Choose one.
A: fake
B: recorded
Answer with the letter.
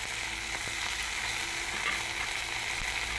B